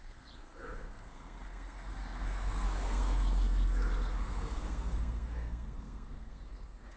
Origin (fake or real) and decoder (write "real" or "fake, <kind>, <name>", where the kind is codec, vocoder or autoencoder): fake, codec, SNAC